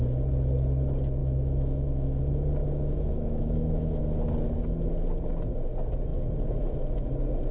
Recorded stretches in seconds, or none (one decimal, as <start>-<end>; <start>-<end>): 0.0-1.2; 2.2-2.6; 4.0-7.5